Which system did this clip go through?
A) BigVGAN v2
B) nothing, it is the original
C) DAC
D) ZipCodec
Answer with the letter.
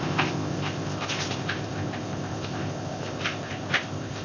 D